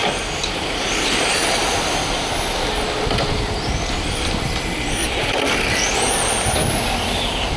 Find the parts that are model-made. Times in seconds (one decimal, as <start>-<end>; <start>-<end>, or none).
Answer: none